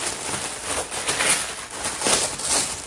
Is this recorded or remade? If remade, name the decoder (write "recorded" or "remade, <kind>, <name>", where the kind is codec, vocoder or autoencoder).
recorded